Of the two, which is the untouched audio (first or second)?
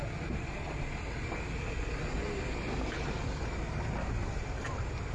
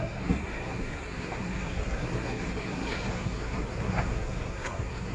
first